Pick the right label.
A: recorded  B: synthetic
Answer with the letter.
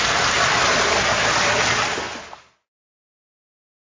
A